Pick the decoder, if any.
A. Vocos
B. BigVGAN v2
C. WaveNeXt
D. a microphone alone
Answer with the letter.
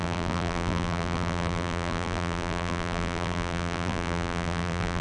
B